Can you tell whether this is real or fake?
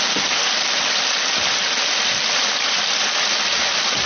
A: fake